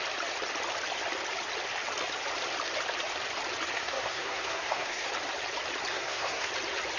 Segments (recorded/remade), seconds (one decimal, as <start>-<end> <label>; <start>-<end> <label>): 0.0-3.7 recorded; 3.7-5.1 remade; 5.1-5.9 recorded; 5.9-6.5 remade; 6.5-7.0 recorded